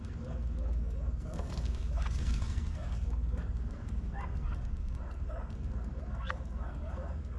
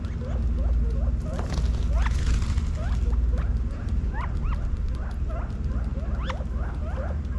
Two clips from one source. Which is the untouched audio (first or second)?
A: second